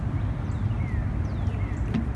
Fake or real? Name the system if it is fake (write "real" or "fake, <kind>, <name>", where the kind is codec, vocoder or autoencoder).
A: real